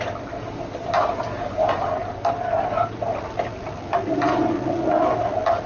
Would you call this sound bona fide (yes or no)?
yes